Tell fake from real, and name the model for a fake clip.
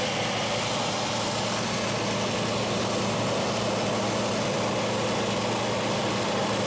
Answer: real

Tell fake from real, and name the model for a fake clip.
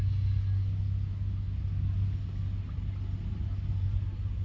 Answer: real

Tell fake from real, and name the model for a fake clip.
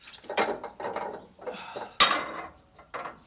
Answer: real